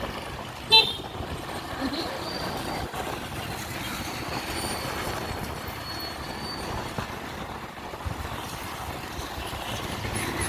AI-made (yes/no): no